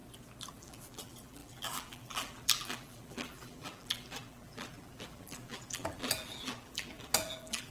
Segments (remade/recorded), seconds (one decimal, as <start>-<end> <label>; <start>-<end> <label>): 0.0-0.5 recorded; 0.5-7.7 remade